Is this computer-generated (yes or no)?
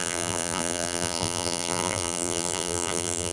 yes